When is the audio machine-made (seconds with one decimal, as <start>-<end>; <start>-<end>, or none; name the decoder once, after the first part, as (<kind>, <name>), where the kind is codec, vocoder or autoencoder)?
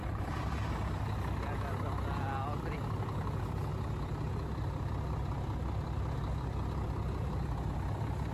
0.0-0.7 (vocoder, BigVGAN v2)